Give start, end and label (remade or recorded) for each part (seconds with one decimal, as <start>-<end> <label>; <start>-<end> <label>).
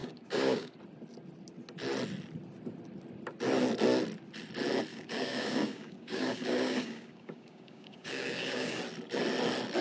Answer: 0.0-0.7 remade; 0.7-4.9 recorded; 4.9-8.8 remade; 8.8-9.8 recorded